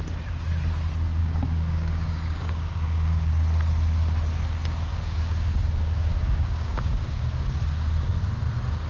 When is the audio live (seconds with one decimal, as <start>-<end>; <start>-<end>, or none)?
0.0-1.2; 3.3-4.9; 7.6-8.9